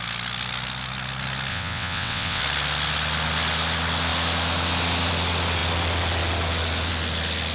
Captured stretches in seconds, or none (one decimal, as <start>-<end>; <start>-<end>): 0.0-1.5; 2.4-7.5